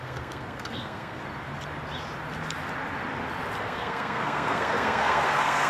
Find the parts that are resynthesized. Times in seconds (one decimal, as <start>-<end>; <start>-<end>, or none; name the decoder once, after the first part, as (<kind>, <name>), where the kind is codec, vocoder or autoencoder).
0.0-1.2 (codec, SNAC); 3.6-5.7